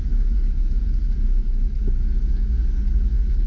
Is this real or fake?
fake